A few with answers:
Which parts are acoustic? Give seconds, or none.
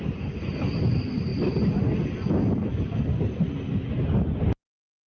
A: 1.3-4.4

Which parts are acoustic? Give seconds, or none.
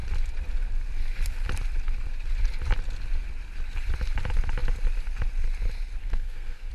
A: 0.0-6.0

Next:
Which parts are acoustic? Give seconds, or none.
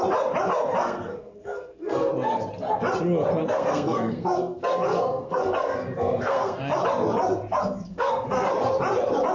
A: 0.0-0.8; 2.1-3.4; 6.6-7.9; 8.5-9.3